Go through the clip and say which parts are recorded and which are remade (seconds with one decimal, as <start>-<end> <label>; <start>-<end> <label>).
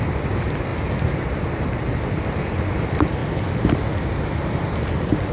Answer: 0.0-0.7 remade; 0.7-2.8 recorded; 2.8-3.2 remade; 3.2-4.5 recorded; 4.5-5.3 remade